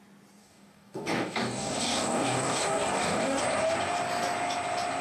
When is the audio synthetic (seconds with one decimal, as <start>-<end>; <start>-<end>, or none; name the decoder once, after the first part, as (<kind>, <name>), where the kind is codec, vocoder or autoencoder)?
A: 0.4-3.4 (codec, DAC)